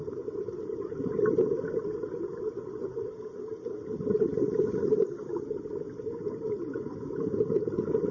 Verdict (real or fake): real